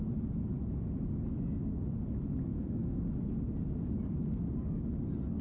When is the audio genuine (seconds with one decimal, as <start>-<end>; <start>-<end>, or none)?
0.0-2.4; 3.0-5.4